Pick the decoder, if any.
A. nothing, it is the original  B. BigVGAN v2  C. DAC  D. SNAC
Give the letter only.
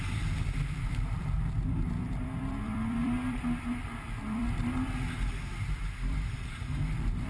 B